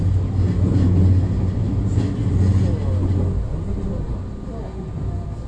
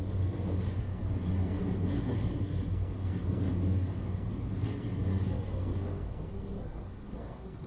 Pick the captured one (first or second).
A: first